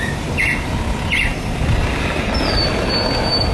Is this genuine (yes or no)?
yes